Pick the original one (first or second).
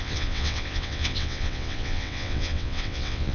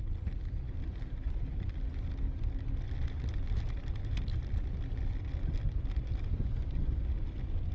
second